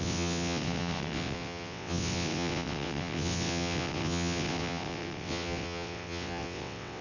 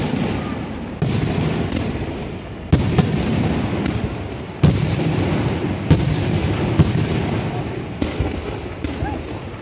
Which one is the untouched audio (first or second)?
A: second